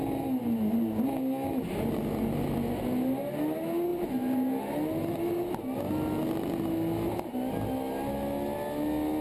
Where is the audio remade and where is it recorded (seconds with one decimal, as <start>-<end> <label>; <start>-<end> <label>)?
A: 0.0-9.2 recorded